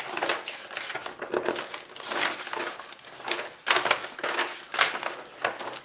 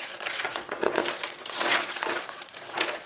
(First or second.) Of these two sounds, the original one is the first